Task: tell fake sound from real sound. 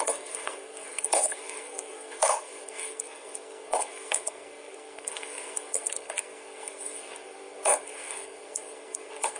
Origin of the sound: fake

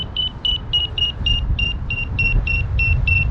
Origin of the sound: real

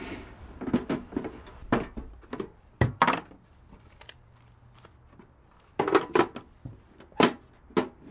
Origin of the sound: real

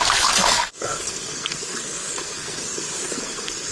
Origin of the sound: fake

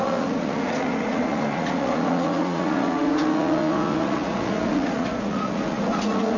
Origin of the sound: fake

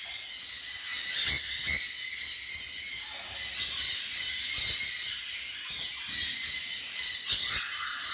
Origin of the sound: real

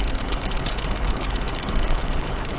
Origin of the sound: fake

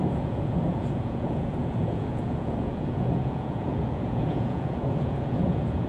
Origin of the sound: fake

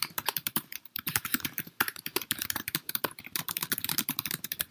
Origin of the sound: fake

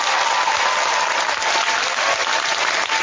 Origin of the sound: real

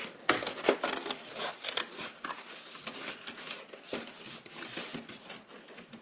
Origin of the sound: real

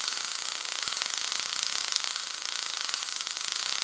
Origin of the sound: fake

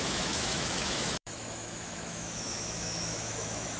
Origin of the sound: fake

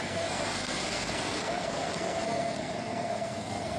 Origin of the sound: fake